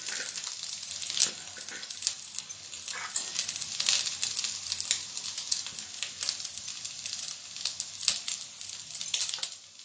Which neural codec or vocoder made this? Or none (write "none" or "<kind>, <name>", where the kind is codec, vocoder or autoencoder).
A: none